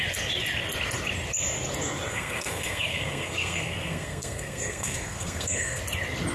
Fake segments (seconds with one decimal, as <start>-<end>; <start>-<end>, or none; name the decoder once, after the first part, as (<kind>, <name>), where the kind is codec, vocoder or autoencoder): 2.1-5.8 (codec, SNAC)